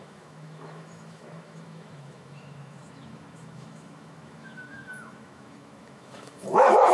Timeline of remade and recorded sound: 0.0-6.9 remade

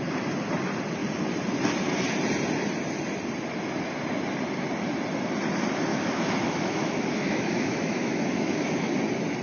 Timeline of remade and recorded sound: 0.0-5.9 recorded; 5.9-9.0 remade; 9.0-9.4 recorded

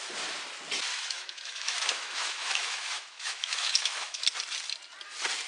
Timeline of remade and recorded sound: 0.0-0.9 recorded; 0.9-4.2 remade; 4.2-5.5 recorded